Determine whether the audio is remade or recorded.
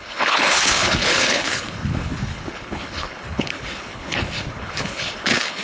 remade